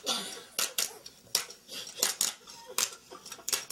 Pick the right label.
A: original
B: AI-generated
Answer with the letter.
A